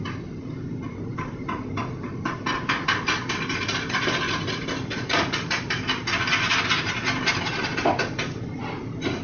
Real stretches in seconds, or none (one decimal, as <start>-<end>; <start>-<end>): 0.0-1.1; 1.7-2.5; 6.9-9.2